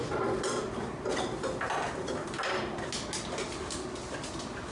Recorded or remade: recorded